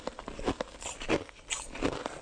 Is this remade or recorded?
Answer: recorded